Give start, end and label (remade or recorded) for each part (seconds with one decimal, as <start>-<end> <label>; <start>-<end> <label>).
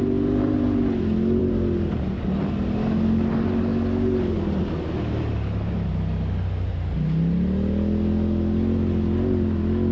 0.0-9.9 recorded